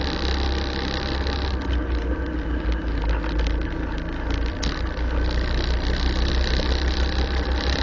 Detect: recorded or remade recorded